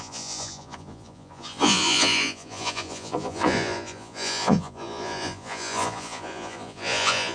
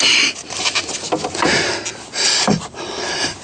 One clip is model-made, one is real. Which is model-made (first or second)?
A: first